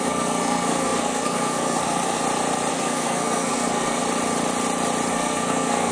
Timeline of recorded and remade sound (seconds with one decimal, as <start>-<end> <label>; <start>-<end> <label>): 0.0-2.2 remade; 2.2-2.7 recorded; 2.7-4.0 remade; 4.0-5.1 recorded; 5.1-5.9 remade